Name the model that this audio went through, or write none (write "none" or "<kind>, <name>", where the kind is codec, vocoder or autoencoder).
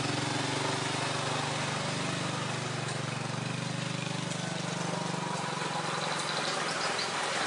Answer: none